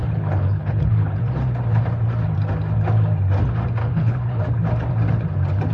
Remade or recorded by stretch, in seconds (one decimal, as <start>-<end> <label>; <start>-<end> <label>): 0.0-1.2 remade; 1.2-3.8 recorded; 3.8-4.4 remade; 4.4-5.7 recorded